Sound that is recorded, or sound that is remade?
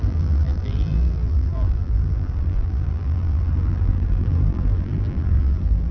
remade